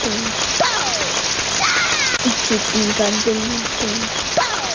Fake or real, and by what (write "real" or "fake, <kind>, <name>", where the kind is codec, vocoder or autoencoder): real